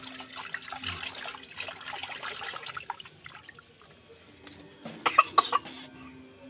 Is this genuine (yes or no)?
yes